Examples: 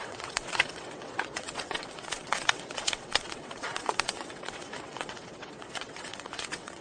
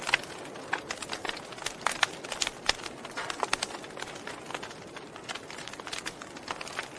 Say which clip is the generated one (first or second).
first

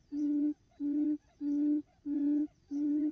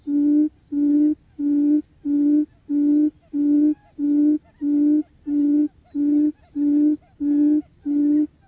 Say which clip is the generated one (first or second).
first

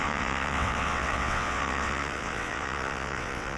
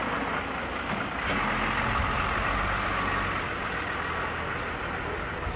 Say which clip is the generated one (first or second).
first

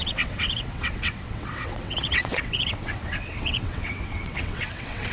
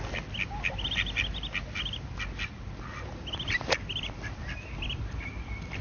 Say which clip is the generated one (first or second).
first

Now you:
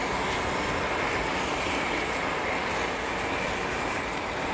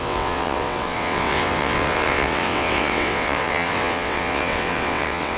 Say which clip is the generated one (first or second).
second